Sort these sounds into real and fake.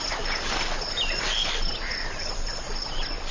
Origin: real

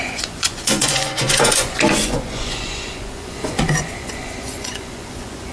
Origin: fake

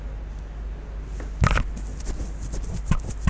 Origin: real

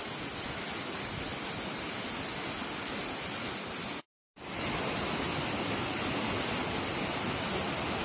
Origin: real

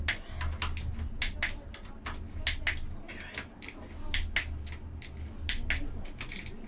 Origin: real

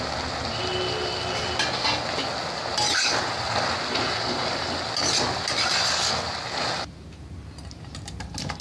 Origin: real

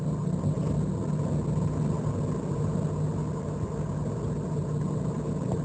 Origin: real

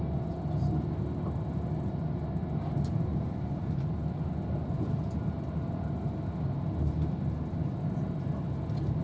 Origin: real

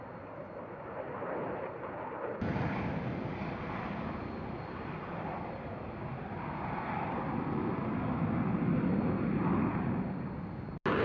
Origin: real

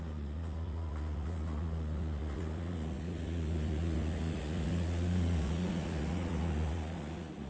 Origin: fake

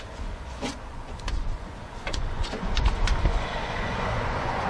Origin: fake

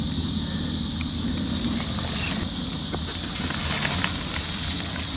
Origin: real